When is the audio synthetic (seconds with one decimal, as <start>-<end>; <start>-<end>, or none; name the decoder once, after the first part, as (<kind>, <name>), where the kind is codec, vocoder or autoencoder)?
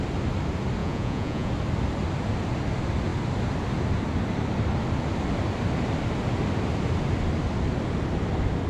0.8-1.5 (vocoder, Vocos)